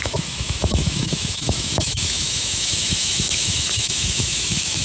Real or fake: fake